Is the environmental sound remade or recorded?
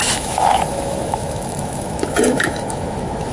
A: remade